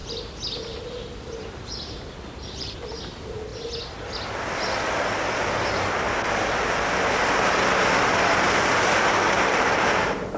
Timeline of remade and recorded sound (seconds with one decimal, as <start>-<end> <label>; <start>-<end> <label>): 0.0-1.6 recorded; 1.6-3.5 remade; 3.5-8.6 recorded; 8.6-10.4 remade